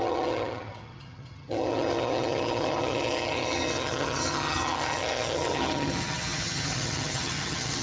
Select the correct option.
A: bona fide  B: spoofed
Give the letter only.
B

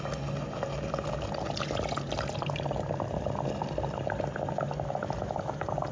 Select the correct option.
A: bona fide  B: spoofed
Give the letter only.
A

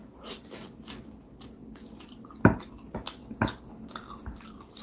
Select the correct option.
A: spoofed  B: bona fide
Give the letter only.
B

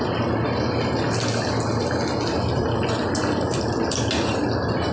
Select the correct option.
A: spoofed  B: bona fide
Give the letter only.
B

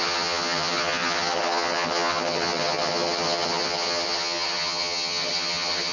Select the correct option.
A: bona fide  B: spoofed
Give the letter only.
B